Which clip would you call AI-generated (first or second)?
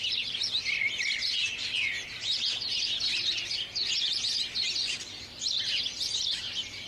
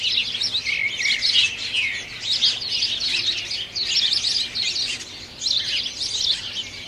first